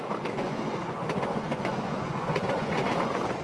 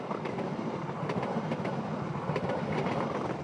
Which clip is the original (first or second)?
second